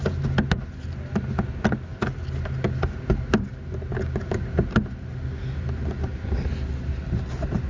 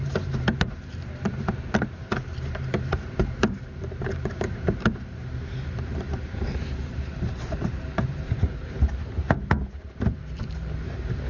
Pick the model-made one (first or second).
second